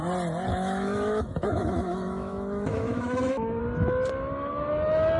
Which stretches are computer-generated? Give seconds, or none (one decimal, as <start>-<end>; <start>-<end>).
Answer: 0.5-3.6